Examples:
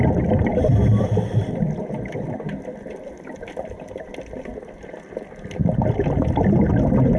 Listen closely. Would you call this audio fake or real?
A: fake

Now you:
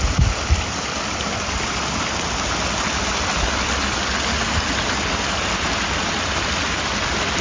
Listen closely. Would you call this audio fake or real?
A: real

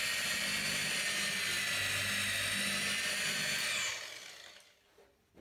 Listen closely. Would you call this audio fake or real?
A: real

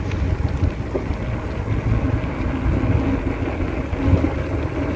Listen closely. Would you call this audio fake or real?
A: real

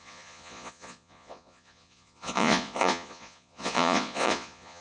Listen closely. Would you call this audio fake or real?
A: fake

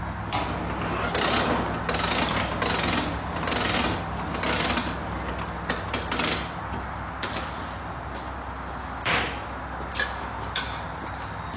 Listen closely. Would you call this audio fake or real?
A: real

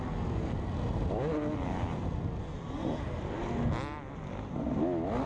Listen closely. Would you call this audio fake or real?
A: real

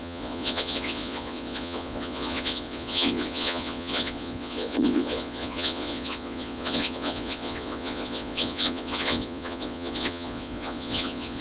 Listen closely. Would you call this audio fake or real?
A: fake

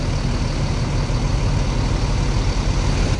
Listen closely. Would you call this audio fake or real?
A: real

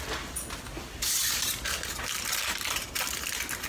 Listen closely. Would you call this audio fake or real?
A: real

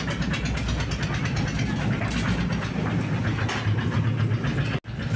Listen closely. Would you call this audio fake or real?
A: real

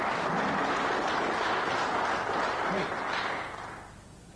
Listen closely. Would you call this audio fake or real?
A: real